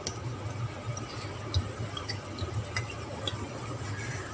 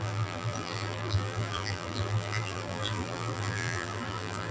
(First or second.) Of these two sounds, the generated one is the second